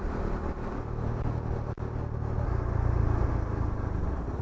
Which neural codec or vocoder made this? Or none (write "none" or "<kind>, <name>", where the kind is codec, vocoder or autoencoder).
none